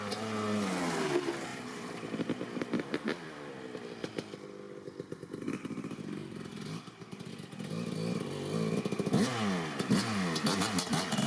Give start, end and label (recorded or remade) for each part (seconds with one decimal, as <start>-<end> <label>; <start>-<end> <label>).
0.0-1.5 recorded; 1.5-3.5 remade; 3.5-6.2 recorded; 6.2-7.3 remade; 7.3-11.3 recorded